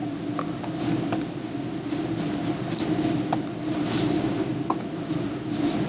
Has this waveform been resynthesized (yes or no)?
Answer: no